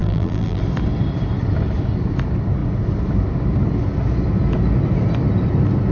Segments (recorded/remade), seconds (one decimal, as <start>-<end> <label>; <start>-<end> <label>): 0.0-0.6 remade; 0.6-5.9 recorded